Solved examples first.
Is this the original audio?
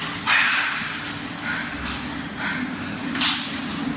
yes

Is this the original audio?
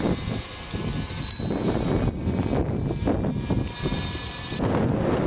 yes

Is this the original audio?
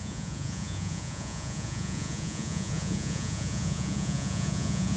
no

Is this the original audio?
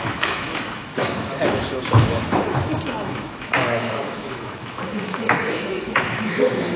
no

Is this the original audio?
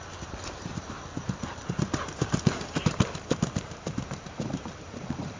no